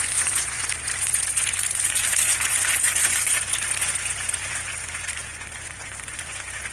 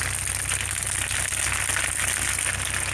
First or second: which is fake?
first